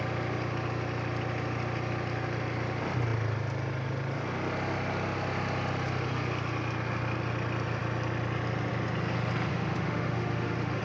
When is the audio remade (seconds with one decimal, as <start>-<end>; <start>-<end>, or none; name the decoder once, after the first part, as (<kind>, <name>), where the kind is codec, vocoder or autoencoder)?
9.5-10.8 (autoencoder, DAC-VAE)